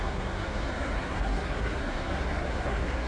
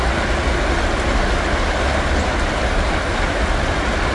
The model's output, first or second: first